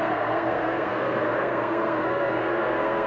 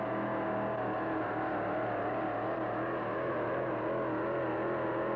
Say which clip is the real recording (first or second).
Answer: second